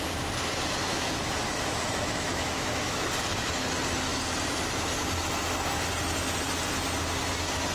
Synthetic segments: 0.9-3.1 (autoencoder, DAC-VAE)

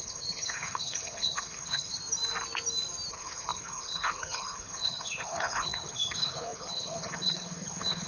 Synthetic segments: 0.0-2.0 (codec, HILCodec); 3.1-8.1

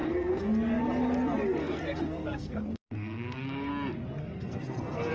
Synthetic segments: 0.0-0.5 (codec, SNAC); 1.6-3.7; 4.2-5.1

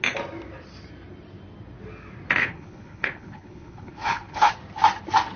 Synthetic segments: 2.4-4.5 (codec, HILCodec)

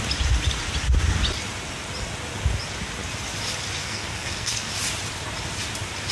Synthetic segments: 3.8-4.7 (codec, SNAC)

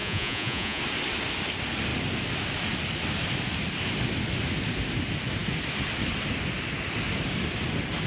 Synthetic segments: 0.0-0.8 (vocoder, Vocos)

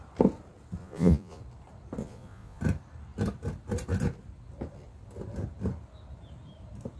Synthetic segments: 0.8-1.4 (vocoder, Vocos); 2.0-2.6